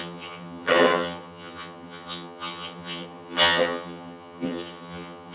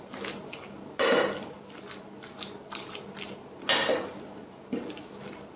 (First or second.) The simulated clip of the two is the first